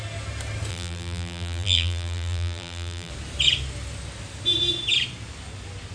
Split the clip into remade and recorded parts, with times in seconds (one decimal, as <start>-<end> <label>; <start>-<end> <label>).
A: 0.0-0.7 recorded; 0.7-3.1 remade; 3.1-5.9 recorded